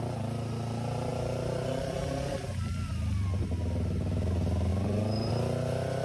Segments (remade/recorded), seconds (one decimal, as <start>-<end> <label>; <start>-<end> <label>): 0.0-6.0 recorded